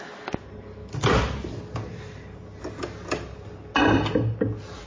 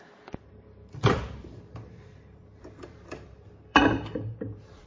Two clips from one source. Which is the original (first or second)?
first